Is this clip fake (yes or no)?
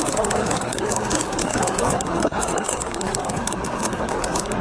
yes